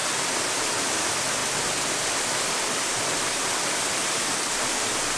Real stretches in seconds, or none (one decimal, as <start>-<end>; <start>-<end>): 0.0-1.4; 4.5-5.2